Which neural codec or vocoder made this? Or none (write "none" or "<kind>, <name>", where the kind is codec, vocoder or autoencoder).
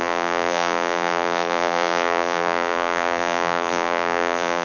vocoder, BigVGAN v2